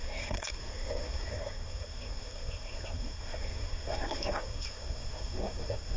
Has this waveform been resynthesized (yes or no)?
yes